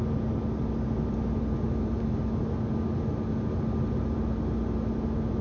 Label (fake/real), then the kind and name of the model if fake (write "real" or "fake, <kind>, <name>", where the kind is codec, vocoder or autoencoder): real